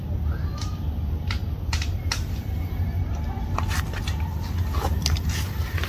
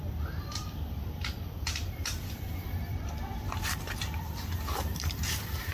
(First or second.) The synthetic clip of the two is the second